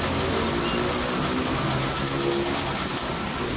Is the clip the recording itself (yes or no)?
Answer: yes